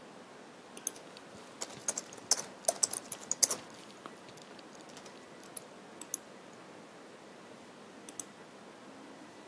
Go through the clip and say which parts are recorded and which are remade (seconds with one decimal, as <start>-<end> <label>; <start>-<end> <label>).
0.0-9.5 recorded